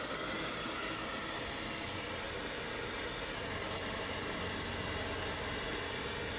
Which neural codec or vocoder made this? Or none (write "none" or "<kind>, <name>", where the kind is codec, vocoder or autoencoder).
none